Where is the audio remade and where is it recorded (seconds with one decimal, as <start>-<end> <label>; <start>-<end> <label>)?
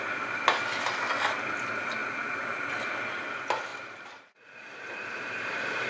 0.0-3.7 recorded; 3.7-5.9 remade